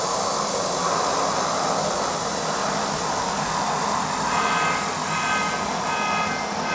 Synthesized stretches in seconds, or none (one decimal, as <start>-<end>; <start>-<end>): none